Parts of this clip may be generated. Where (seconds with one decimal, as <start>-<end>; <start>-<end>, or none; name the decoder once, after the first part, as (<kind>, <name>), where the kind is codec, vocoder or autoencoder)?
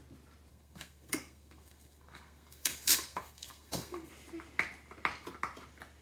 0.5-4.1 (codec, SNAC)